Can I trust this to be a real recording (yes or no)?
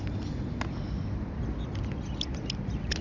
yes